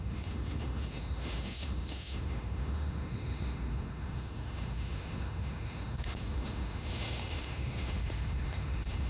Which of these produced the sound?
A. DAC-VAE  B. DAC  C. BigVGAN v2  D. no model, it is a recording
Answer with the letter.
A